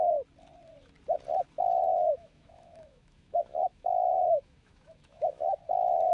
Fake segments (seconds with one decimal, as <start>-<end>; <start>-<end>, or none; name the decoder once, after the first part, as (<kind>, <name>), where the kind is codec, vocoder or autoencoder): 1.9-5.6 (autoencoder, DAC-VAE)